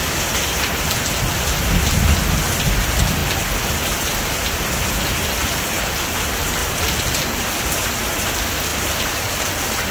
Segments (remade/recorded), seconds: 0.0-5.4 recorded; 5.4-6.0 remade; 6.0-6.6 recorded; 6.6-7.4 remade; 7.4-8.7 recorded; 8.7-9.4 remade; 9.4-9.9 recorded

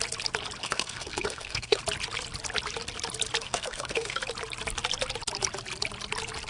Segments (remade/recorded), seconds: 0.0-0.6 recorded; 0.6-1.8 remade; 1.8-3.4 recorded; 3.4-4.2 remade; 4.2-6.5 recorded